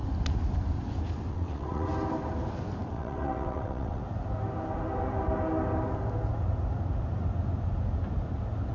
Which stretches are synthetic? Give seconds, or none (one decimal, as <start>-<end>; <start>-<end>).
1.3-1.9; 2.9-4.0